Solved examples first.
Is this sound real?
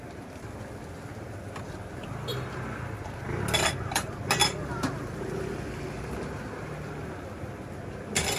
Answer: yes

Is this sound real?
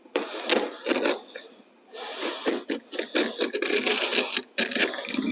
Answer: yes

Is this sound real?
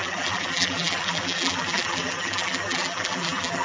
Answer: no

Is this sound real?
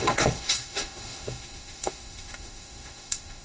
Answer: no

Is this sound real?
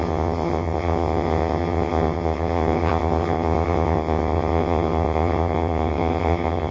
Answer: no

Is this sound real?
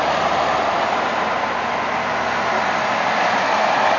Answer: yes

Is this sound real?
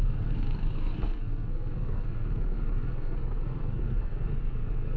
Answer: no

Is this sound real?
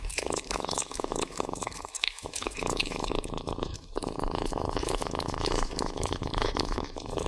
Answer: no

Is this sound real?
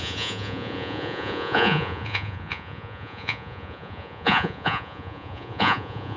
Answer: no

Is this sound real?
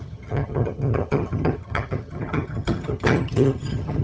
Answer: no